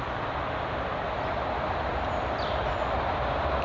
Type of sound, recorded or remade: recorded